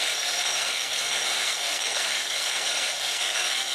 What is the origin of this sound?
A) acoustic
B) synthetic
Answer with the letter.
B